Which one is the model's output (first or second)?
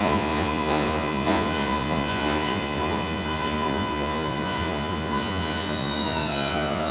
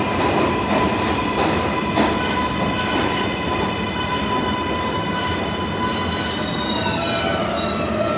first